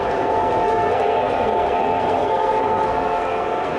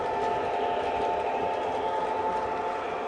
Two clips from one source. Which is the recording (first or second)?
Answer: second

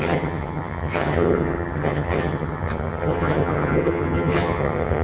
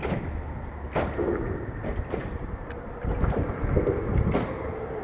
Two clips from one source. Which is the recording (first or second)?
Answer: second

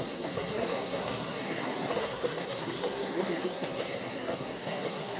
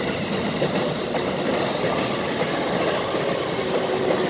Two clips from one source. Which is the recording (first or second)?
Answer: second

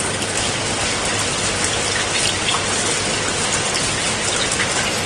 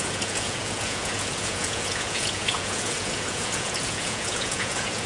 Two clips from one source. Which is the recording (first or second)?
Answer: first